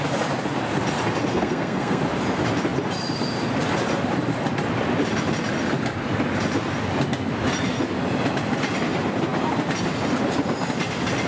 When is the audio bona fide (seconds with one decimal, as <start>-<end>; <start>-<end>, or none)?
0.0-1.3; 2.0-11.3